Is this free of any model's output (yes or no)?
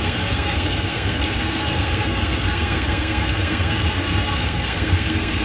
no